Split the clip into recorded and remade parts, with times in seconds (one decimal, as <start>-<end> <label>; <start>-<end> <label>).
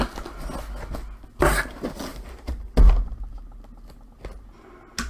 0.0-5.1 recorded